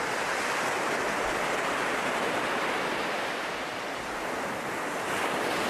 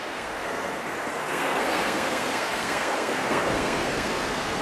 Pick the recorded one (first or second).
first